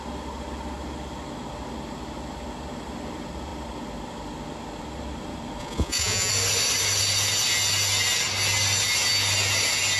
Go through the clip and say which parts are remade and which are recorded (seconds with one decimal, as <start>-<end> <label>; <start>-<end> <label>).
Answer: 0.0-5.6 recorded; 5.6-6.3 remade; 6.3-10.0 recorded